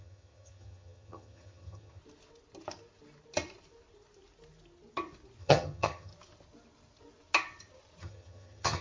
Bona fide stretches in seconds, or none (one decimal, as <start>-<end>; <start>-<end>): 2.0-5.4; 6.1-8.0